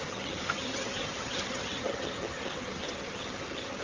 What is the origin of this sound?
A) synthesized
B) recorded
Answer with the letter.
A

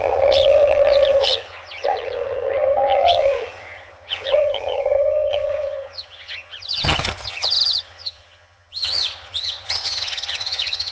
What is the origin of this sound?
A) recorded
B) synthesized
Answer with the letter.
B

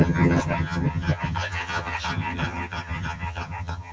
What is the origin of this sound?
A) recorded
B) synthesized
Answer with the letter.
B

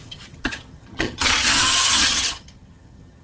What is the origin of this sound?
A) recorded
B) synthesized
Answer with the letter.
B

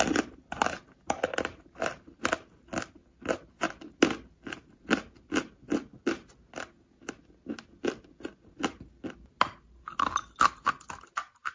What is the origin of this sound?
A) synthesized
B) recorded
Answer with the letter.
B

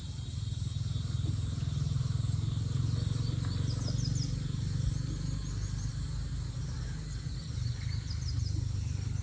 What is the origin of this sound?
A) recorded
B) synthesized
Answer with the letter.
A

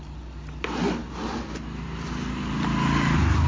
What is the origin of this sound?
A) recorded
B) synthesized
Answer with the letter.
A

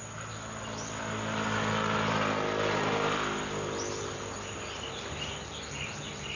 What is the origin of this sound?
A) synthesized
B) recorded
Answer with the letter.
B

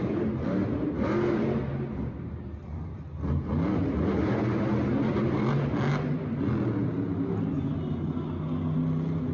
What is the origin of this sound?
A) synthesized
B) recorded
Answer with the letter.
B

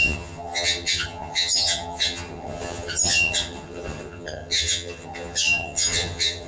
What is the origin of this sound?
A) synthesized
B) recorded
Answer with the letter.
A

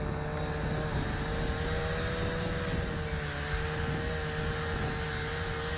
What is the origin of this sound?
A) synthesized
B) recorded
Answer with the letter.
B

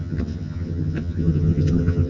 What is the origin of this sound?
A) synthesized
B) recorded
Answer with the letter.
A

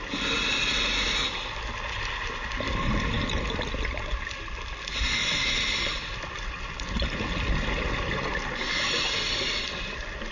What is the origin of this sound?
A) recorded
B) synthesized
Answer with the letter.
A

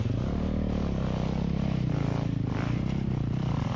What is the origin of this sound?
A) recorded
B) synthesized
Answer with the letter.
A